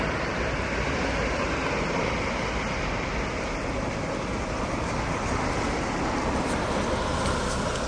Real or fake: real